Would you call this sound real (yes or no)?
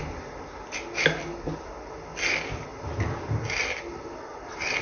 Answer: yes